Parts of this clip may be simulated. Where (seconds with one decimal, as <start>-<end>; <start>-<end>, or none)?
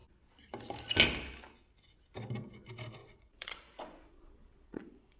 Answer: 3.0-5.2